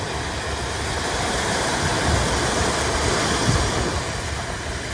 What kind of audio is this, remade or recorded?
recorded